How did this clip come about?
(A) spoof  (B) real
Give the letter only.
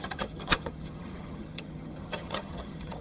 A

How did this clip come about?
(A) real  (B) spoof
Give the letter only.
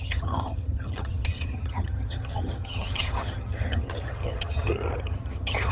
B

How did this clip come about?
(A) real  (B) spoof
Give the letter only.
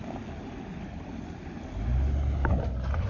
A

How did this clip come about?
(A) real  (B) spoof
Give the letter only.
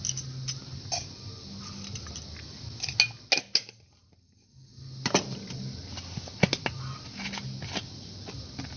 A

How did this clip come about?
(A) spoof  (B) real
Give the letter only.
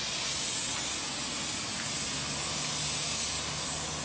B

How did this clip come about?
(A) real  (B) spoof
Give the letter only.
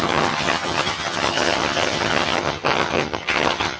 B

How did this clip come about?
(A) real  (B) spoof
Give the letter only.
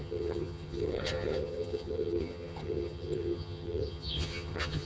B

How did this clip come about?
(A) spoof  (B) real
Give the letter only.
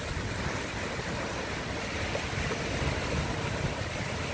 B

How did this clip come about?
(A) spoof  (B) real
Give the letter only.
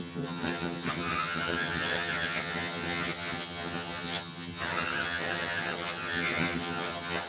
A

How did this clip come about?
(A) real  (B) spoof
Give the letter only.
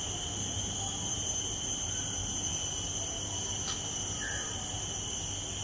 A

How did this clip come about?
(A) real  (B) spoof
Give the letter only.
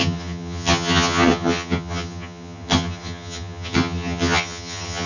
B